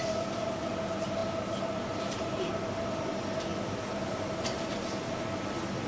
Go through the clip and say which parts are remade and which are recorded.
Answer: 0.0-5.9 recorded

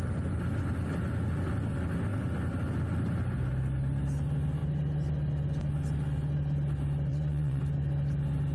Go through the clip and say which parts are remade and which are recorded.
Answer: 0.0-7.1 recorded; 7.1-7.6 remade; 7.6-8.5 recorded

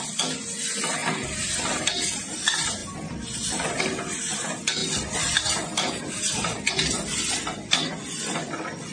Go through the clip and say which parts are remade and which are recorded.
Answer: 0.0-8.9 recorded